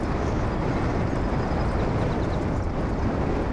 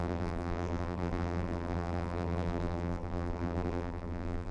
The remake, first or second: second